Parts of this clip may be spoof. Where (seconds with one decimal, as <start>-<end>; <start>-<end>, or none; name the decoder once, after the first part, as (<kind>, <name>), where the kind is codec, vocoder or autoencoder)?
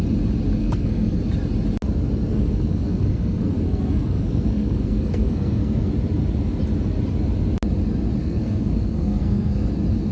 0.6-1.2 (codec, SNAC); 2.3-5.9; 8.2-9.7